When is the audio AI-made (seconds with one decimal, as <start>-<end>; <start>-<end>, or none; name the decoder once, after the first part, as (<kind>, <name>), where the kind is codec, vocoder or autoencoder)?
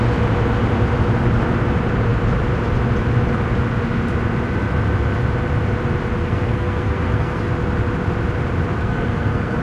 6.2-7.5 (codec, SNAC); 8.8-9.6